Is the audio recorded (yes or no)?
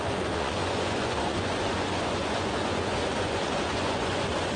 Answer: no